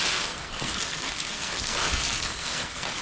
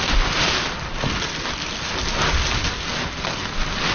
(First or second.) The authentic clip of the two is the second